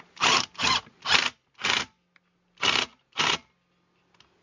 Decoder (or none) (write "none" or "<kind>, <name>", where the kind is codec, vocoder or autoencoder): none